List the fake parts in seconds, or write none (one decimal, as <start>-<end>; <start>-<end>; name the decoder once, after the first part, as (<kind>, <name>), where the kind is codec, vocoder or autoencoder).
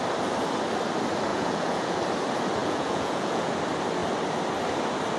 1.3-2.0 (vocoder, Vocos); 2.6-3.6